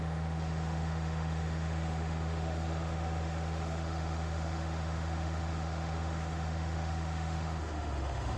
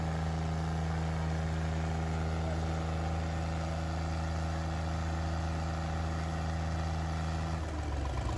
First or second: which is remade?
first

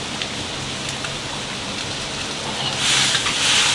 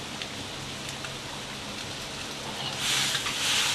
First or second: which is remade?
first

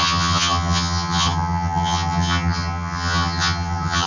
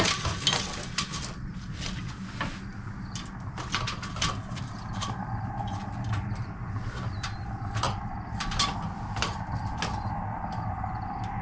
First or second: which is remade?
first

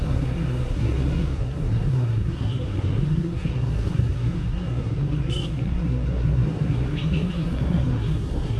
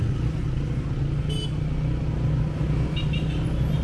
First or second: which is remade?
first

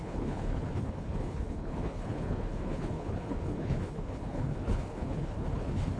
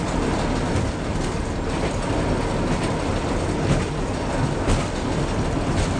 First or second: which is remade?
first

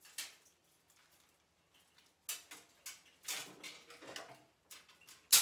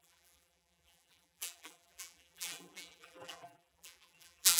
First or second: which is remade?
second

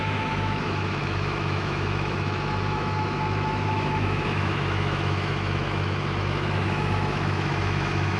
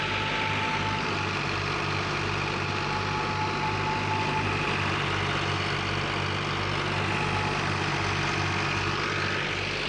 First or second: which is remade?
first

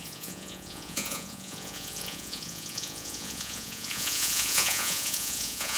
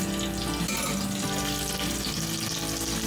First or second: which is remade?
first